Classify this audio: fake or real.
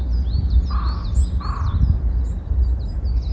real